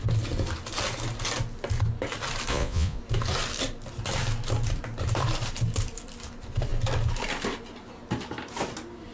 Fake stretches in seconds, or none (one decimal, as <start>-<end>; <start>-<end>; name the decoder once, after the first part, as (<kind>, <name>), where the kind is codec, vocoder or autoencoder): 2.5-3.0 (vocoder, Vocos)